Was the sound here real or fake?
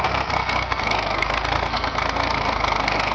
fake